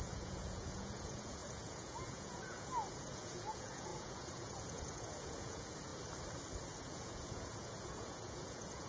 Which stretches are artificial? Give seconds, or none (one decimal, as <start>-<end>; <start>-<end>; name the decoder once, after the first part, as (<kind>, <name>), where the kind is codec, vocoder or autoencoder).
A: 0.0-5.9 (vocoder, Vocos); 6.8-8.9